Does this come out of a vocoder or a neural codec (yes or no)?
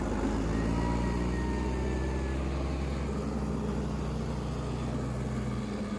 no